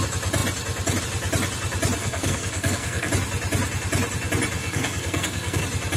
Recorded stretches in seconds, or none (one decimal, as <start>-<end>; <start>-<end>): 0.0-2.0; 3.1-4.6; 5.6-6.0